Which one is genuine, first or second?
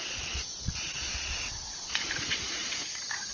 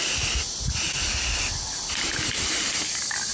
second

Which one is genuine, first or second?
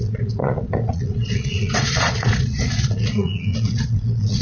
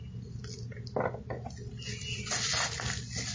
second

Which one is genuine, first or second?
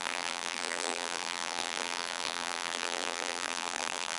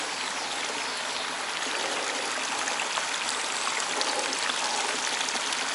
second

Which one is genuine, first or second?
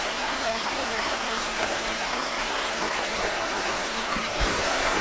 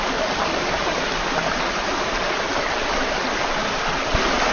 second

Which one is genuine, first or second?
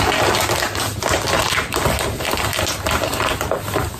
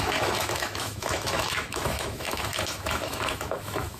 first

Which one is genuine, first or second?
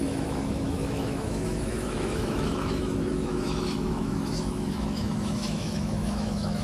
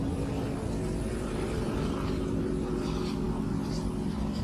second